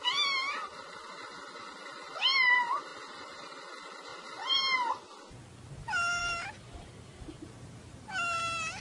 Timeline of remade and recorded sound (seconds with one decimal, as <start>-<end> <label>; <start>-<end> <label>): 0.0-2.9 recorded; 2.9-3.6 remade; 3.6-6.2 recorded; 6.2-7.5 remade; 7.5-8.8 recorded